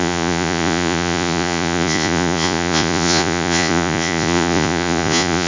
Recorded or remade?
remade